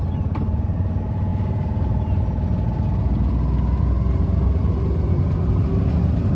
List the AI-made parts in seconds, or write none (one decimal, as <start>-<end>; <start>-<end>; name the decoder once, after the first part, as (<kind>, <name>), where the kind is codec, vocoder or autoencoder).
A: none